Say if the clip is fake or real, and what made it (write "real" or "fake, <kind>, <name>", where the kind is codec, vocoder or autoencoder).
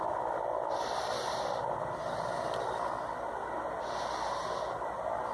real